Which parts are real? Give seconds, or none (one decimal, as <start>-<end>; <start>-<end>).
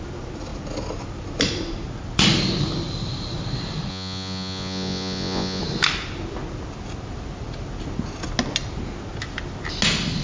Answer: 0.0-3.9; 5.6-10.2